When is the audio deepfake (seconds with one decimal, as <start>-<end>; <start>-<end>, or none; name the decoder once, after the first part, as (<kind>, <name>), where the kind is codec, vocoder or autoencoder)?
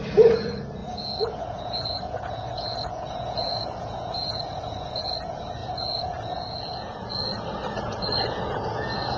0.0-9.2 (vocoder, Vocos)